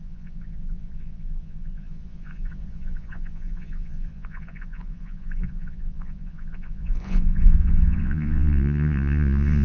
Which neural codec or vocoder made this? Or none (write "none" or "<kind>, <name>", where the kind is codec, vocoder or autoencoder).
vocoder, Vocos